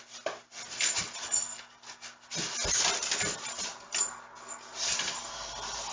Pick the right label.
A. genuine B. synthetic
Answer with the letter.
A